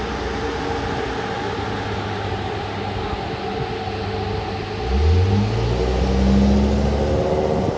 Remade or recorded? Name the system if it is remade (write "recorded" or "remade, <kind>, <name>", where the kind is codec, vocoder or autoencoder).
recorded